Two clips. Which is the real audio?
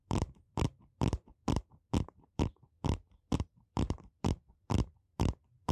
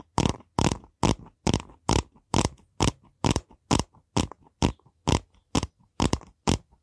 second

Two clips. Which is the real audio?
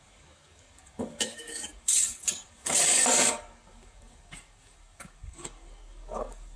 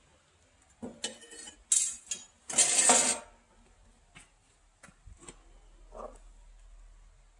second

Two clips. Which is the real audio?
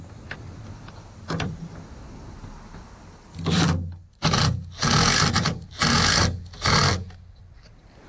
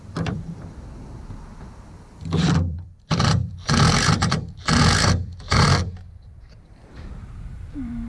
first